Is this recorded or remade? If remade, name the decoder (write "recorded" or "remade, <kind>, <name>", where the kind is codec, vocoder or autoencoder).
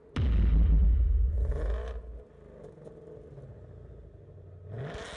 recorded